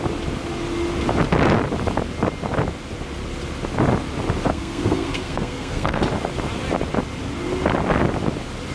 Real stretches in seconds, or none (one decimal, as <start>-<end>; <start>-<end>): 0.0-4.5; 6.0-8.7